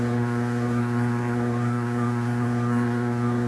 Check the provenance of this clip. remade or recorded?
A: remade